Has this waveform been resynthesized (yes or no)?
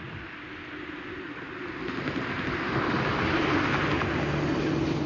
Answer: no